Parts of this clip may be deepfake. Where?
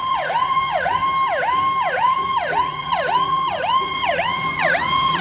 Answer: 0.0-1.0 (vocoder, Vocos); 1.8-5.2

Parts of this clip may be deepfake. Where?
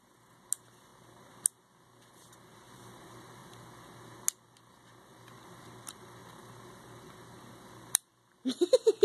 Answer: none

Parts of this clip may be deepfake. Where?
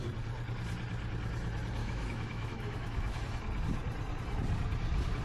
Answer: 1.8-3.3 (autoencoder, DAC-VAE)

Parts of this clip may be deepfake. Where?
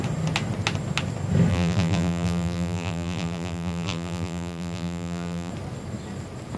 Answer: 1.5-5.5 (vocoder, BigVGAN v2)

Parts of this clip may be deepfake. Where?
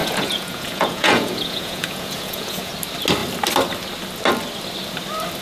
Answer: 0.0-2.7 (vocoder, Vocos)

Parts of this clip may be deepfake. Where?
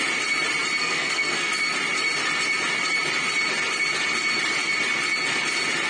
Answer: 0.8-1.5 (codec, SNAC)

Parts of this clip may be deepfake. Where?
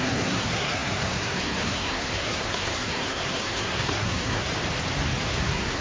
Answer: 0.0-4.5 (codec, SNAC); 5.2-5.8